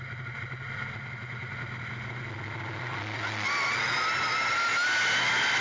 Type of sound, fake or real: real